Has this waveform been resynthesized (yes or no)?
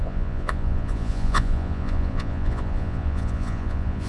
yes